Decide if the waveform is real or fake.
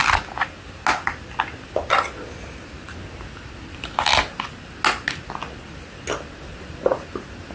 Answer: real